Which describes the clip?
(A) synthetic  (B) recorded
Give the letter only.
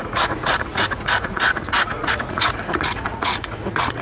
A